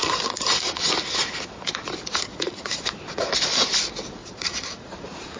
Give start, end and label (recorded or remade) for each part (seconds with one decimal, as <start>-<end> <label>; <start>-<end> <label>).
0.0-0.9 remade; 0.9-2.3 recorded; 2.3-3.3 remade; 3.3-4.2 recorded; 4.2-5.4 remade